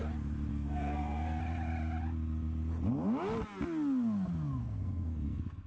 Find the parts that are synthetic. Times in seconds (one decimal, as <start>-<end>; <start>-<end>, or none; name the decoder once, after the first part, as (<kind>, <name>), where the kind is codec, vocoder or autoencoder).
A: 0.5-1.4 (codec, SNAC); 4.6-5.7